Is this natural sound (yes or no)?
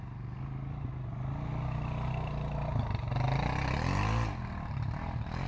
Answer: yes